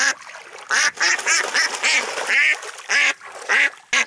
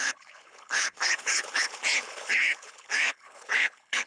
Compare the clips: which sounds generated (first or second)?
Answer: second